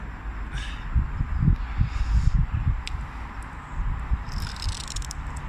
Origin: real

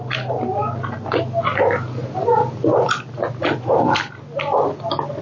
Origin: real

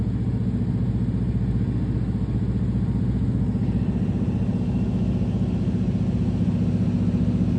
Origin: real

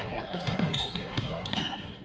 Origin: fake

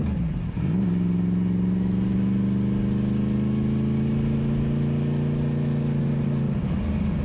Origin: real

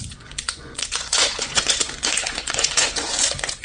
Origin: fake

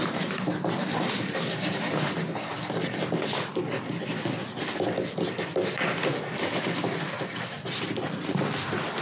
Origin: real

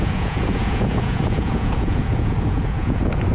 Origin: fake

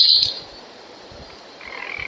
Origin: fake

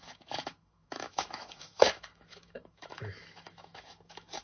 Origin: fake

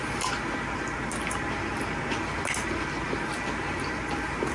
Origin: real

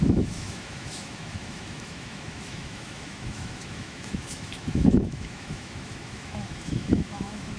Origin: fake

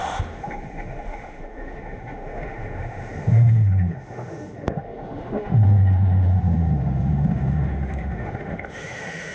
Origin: fake